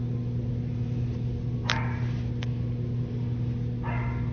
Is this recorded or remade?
recorded